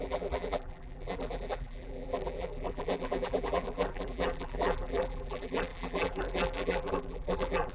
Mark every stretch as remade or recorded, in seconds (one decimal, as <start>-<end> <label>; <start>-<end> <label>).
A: 0.0-7.7 remade